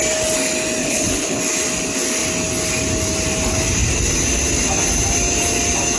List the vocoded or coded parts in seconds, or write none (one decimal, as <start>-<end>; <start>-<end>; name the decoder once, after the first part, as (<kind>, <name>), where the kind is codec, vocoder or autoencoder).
0.8-1.4 (codec, HILCodec)